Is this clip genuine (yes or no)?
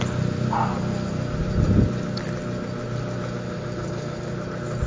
yes